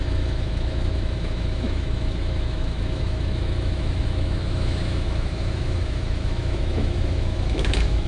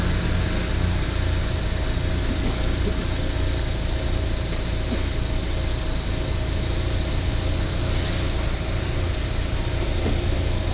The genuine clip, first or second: second